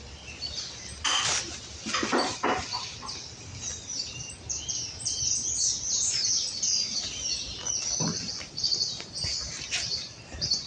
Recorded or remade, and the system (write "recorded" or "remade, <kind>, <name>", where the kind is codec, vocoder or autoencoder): recorded